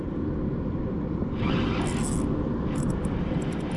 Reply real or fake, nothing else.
real